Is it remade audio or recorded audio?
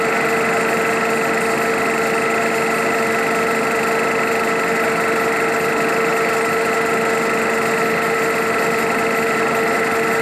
recorded